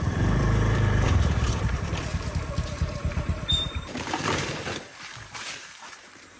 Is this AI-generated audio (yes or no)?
yes